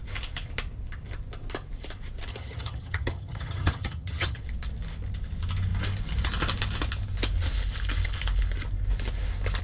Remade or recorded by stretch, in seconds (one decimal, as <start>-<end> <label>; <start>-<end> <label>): 0.0-2.3 recorded; 2.3-4.4 remade; 4.4-9.6 recorded

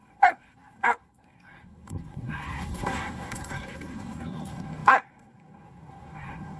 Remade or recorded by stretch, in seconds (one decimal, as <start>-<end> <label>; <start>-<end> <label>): 0.0-6.6 remade

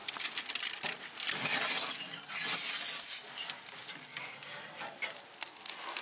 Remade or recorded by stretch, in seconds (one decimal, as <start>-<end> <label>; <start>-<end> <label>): 0.0-6.0 recorded